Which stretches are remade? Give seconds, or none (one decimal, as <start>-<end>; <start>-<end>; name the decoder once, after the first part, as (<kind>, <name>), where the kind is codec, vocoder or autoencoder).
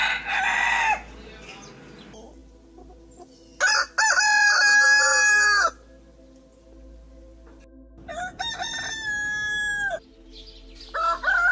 none